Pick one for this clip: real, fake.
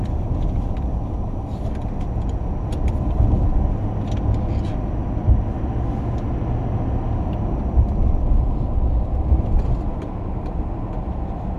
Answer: real